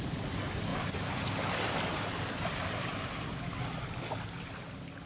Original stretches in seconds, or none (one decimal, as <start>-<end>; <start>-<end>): 0.0-0.7; 3.8-5.1